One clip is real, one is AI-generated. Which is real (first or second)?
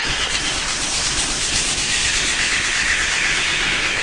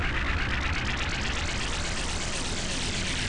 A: second